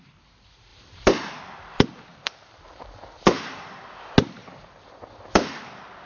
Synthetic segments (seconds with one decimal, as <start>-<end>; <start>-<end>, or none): 0.7-1.4; 2.1-3.9; 4.4-5.6